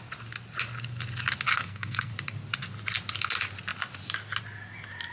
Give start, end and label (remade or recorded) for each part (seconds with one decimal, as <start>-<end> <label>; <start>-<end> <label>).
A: 0.0-1.5 recorded; 1.5-2.1 remade; 2.1-5.1 recorded